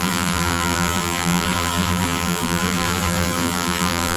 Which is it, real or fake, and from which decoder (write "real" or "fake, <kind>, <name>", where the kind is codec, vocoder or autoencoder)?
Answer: fake, vocoder, BigVGAN v2